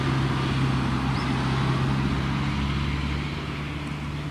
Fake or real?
real